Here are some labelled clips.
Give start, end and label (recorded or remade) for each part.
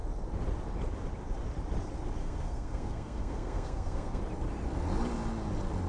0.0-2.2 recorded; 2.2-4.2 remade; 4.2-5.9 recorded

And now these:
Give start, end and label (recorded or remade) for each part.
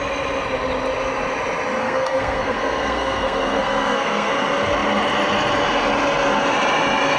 0.0-1.8 recorded; 1.8-4.3 remade; 4.3-7.2 recorded